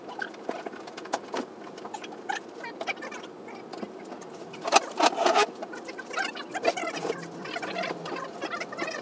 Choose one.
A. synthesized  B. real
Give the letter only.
B